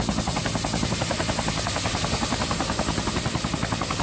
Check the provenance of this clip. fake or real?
real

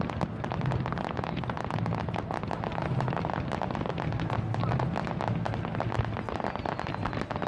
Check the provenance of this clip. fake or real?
real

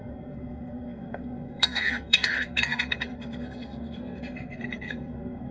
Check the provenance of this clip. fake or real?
fake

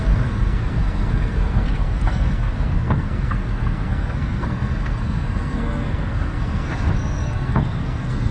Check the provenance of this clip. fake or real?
fake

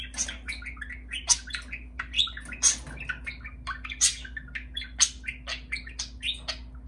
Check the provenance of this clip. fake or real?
real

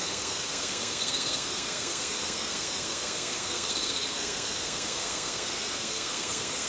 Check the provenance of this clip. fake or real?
fake